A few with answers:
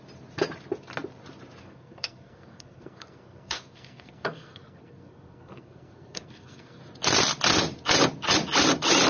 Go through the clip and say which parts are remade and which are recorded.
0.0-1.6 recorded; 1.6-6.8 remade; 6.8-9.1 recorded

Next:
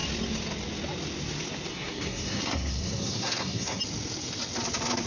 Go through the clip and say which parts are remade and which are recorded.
0.0-1.7 recorded; 1.7-3.8 remade; 3.8-5.1 recorded

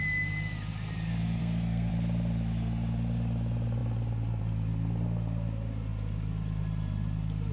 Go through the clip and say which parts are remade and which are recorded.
0.0-1.4 recorded; 1.4-1.9 remade; 1.9-7.5 recorded

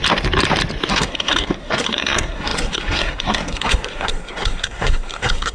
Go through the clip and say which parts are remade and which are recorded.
0.0-0.9 recorded; 0.9-5.5 remade

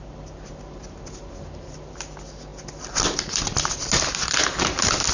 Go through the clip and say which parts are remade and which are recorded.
0.0-5.1 recorded

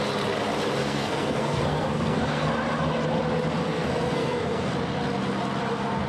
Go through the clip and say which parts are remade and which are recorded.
0.0-0.8 recorded; 0.8-2.5 remade; 2.5-3.6 recorded; 3.6-4.7 remade; 4.7-6.1 recorded

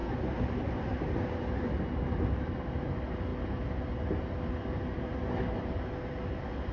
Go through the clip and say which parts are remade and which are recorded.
0.0-6.7 recorded